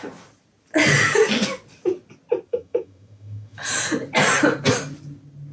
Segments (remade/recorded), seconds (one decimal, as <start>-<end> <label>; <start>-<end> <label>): 0.0-2.5 recorded; 2.5-3.7 remade; 3.7-5.5 recorded